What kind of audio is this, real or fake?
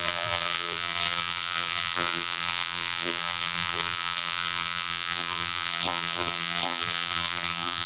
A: fake